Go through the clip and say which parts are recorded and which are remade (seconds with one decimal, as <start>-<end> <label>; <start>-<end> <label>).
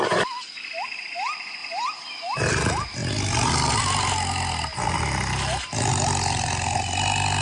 0.0-7.4 recorded